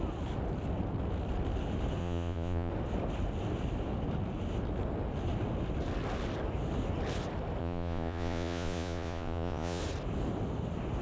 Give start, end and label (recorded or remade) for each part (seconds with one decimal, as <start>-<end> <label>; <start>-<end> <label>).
0.0-2.0 recorded; 2.0-2.7 remade; 2.7-7.6 recorded; 7.6-9.8 remade; 9.8-11.0 recorded